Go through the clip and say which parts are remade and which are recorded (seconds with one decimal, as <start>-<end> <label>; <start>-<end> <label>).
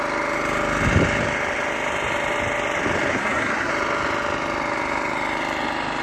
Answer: 0.0-3.1 recorded; 3.1-3.7 remade; 3.7-6.0 recorded